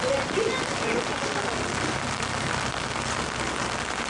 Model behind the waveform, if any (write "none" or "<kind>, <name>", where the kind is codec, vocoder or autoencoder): none